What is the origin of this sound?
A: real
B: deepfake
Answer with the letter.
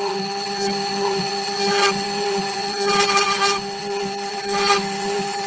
B